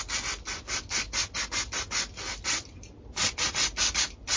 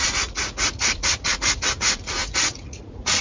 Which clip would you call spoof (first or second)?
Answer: second